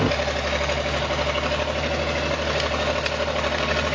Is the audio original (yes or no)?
yes